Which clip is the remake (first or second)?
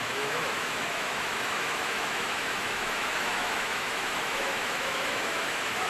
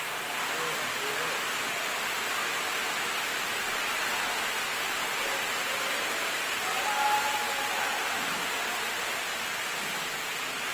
first